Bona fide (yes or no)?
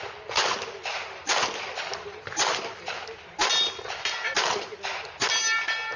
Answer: yes